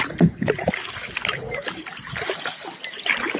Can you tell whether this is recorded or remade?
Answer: recorded